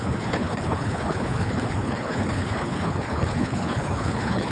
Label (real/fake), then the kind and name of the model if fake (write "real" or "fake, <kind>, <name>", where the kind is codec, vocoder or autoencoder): fake, codec, HILCodec